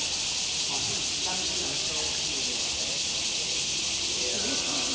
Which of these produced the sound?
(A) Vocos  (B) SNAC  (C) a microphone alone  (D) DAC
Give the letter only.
C